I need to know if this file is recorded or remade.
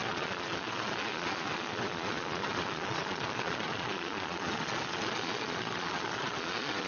remade